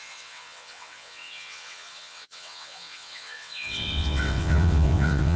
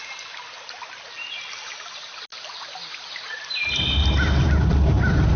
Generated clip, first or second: first